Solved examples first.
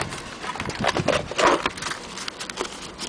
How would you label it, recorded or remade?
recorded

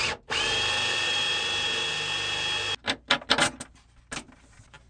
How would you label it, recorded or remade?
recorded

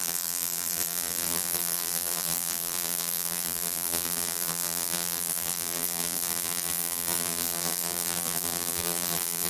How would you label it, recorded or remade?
remade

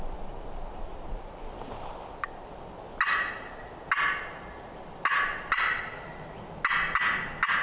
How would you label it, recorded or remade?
recorded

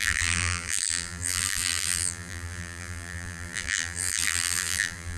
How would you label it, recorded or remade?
remade